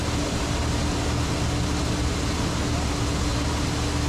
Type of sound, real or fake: real